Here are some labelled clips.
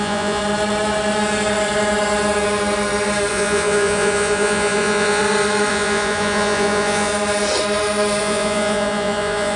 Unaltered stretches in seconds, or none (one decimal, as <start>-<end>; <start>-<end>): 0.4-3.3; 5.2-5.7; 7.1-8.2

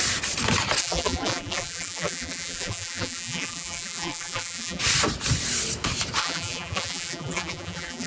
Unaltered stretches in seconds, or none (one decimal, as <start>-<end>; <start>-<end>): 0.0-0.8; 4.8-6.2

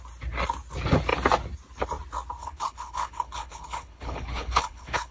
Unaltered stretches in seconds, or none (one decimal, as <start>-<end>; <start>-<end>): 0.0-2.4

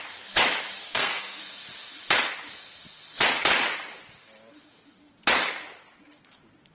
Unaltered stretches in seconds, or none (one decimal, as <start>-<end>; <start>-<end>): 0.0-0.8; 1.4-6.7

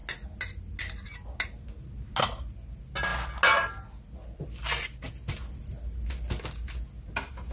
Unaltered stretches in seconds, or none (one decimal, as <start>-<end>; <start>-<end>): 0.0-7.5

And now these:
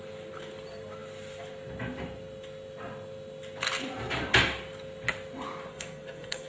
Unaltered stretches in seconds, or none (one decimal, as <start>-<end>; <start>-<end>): 0.0-5.7

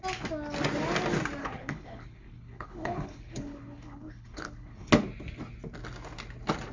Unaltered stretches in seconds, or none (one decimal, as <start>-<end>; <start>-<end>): 0.0-1.4; 4.9-6.7

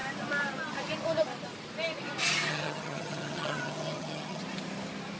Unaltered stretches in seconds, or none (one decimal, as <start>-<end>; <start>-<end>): 0.0-2.5; 4.4-5.2